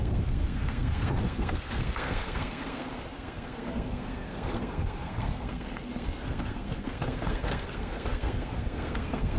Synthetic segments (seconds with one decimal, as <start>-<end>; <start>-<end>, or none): 0.0-9.4